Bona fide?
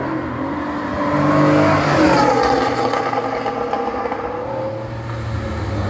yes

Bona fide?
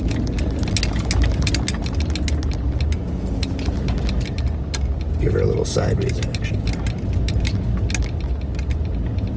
yes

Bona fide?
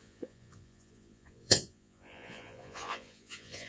no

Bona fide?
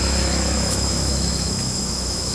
no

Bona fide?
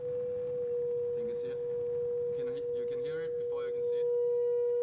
yes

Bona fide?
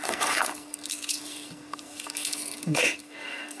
no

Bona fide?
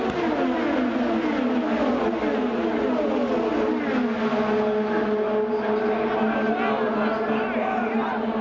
yes